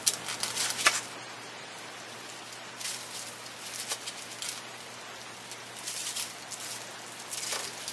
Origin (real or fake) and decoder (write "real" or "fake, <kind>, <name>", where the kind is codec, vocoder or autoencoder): real